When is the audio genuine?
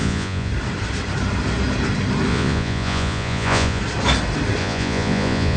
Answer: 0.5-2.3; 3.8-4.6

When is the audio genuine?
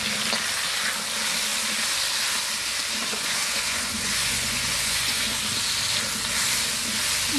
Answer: 0.0-3.1; 5.4-7.4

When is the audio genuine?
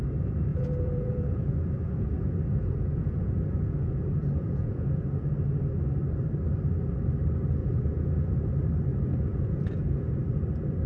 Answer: 0.0-0.5; 5.3-7.6; 8.3-8.9; 10.2-10.9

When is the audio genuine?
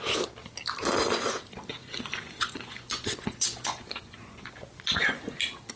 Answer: 0.0-1.8; 5.2-5.8